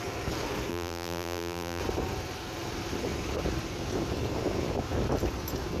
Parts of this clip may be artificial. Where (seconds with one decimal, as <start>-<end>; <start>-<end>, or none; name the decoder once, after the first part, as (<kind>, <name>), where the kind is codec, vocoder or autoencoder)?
0.7-1.8 (vocoder, BigVGAN v2)